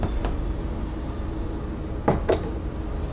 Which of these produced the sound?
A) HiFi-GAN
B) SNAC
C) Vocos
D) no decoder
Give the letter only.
D